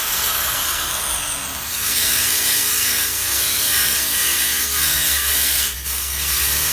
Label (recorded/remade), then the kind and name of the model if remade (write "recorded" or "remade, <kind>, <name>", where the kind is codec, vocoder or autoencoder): remade, codec, SNAC